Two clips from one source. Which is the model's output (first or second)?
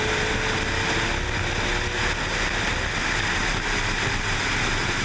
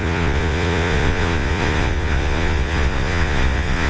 second